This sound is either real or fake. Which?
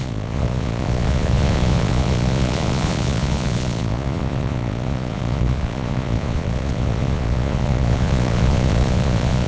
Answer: fake